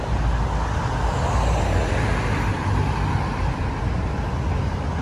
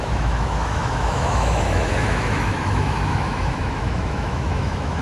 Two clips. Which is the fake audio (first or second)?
second